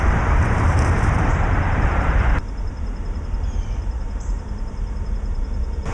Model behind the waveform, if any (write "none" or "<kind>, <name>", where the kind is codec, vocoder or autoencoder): vocoder, BigVGAN v2